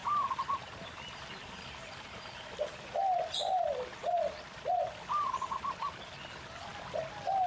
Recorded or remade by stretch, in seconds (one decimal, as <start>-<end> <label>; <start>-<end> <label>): 0.0-7.5 recorded